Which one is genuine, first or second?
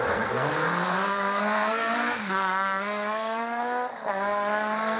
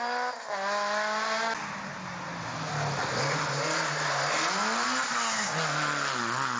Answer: second